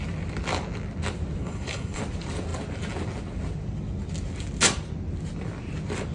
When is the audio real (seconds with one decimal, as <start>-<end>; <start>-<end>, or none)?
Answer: 0.0-1.4; 2.0-6.1